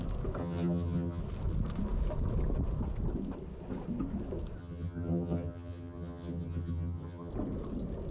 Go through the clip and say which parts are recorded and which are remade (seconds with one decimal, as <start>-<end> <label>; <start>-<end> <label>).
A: 0.0-0.4 recorded; 0.4-1.2 remade; 1.2-4.6 recorded; 4.6-7.3 remade; 7.3-8.1 recorded